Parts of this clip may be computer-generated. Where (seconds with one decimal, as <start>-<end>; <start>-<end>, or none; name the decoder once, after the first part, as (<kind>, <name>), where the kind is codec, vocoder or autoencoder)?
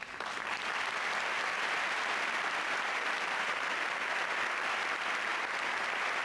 0.0-5.3 (vocoder, BigVGAN v2); 5.8-6.2